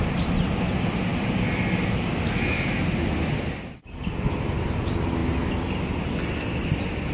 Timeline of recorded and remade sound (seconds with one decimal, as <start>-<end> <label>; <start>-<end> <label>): 0.0-7.1 recorded